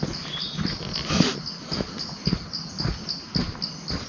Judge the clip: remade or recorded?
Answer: recorded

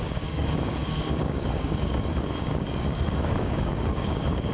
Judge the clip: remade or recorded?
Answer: remade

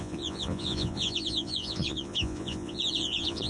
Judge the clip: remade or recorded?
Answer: remade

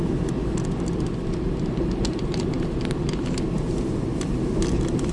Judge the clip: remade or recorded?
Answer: recorded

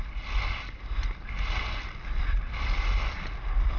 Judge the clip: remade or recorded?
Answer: recorded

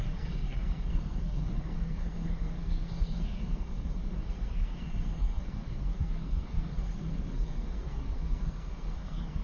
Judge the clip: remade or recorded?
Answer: remade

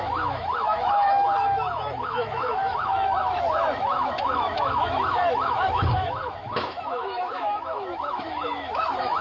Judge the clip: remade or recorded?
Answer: remade